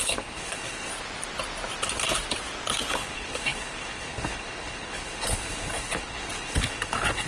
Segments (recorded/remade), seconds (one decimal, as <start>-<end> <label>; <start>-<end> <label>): 0.0-0.9 remade; 0.9-2.9 recorded; 2.9-7.3 remade